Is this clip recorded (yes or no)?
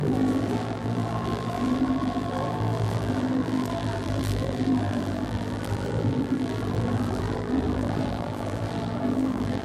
no